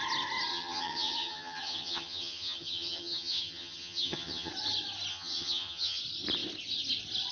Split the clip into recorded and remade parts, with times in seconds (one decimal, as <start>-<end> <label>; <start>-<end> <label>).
0.0-0.5 recorded; 0.5-4.5 remade; 4.5-5.1 recorded; 5.1-6.0 remade; 6.0-7.3 recorded